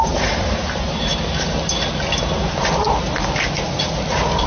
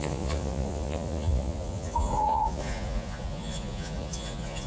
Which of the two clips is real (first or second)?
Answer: first